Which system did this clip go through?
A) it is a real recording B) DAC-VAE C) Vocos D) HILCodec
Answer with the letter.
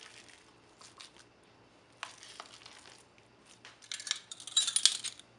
A